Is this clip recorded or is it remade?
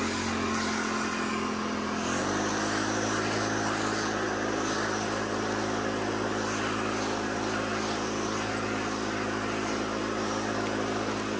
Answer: recorded